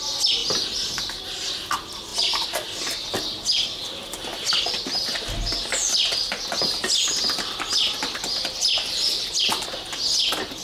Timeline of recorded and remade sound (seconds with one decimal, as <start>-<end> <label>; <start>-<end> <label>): 0.0-10.6 recorded